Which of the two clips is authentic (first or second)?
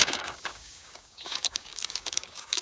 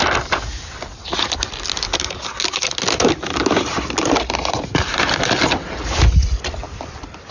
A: second